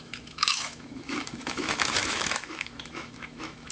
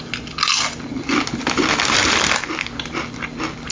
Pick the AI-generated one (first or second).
first